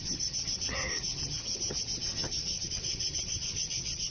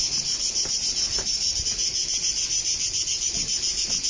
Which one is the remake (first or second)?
first